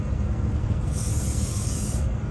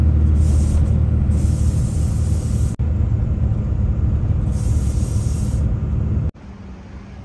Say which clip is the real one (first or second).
second